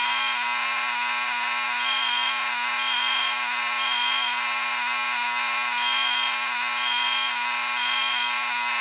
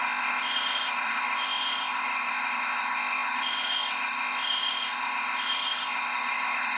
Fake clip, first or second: second